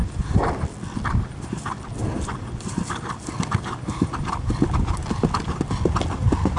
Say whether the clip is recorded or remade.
recorded